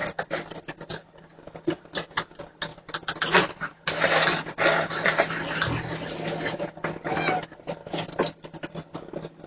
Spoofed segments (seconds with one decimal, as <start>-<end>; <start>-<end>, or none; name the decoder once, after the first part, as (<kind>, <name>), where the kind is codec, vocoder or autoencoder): none